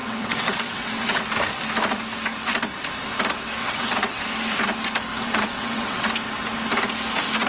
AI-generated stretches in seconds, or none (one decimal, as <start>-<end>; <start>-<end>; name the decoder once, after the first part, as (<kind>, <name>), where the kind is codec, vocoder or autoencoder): 0.0-1.2 (vocoder, WaveNeXt); 3.6-4.2; 5.1-6.1